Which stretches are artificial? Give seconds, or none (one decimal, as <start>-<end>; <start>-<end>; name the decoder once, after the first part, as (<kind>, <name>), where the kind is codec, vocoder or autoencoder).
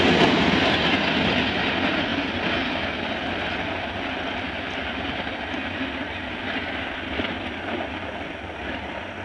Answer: none